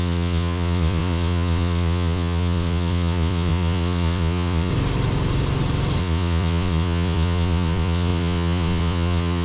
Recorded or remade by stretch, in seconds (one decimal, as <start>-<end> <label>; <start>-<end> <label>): 0.0-4.7 remade; 4.7-6.0 recorded; 6.0-9.4 remade